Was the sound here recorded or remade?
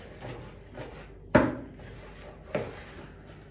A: recorded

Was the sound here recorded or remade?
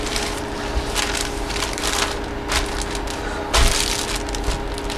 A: recorded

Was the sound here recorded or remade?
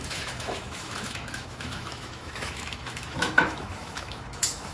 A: remade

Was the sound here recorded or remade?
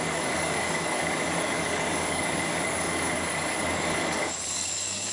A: remade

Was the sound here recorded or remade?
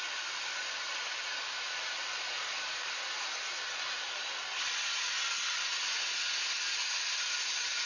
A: recorded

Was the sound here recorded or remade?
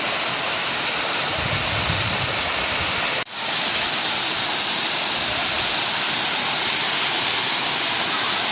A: recorded